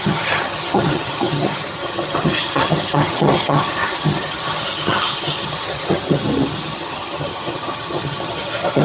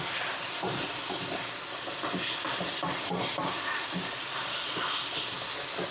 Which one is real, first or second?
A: second